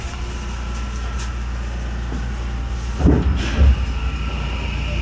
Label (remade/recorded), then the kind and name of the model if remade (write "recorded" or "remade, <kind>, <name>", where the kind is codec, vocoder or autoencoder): recorded